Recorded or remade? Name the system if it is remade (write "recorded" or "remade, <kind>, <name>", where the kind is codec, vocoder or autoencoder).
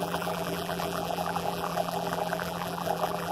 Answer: remade, vocoder, BigVGAN v2